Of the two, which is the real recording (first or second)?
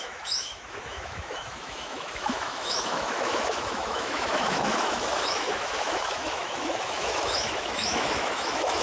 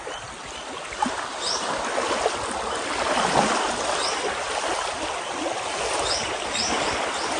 second